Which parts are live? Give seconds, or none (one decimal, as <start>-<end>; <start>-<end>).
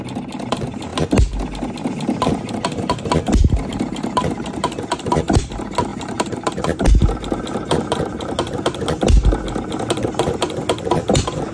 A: 0.0-5.9; 8.9-11.5